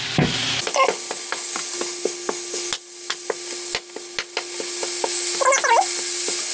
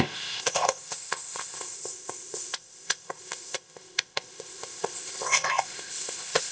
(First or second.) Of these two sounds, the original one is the first